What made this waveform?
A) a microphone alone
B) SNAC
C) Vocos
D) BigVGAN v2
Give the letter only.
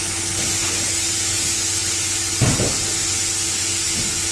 A